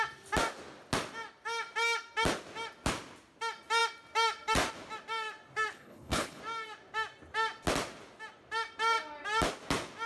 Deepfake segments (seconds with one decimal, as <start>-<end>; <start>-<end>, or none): 5.7-6.4